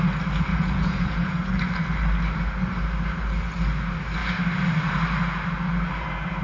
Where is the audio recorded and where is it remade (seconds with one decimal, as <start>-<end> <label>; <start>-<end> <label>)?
0.0-0.5 recorded; 0.5-1.4 remade; 1.4-6.4 recorded